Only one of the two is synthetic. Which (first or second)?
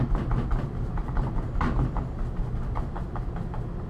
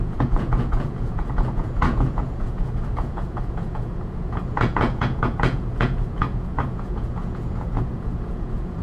second